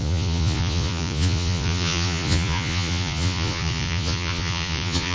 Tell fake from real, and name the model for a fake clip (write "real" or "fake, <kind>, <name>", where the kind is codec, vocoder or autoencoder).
fake, vocoder, Vocos